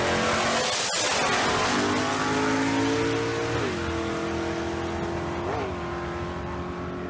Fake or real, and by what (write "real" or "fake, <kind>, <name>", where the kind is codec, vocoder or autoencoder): real